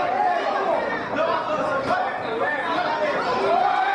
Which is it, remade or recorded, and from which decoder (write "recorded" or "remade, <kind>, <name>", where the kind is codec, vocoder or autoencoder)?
recorded